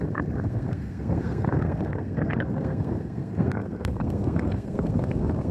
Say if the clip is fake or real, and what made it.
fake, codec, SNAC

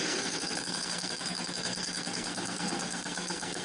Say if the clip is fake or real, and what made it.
fake, codec, SNAC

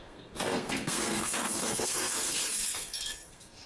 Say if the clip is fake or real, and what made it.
fake, codec, SNAC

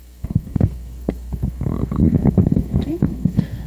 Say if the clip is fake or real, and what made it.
fake, codec, SNAC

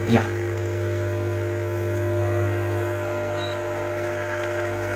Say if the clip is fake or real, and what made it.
fake, codec, SNAC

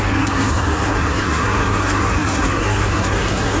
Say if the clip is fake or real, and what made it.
fake, codec, SNAC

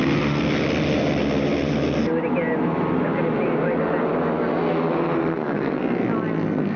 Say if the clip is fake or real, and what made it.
real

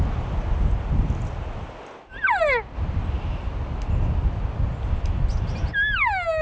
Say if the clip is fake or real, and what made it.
real